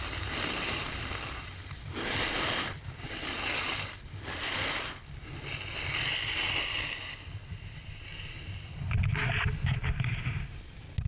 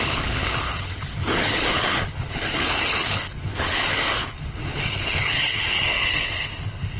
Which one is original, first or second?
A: first